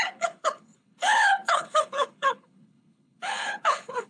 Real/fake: fake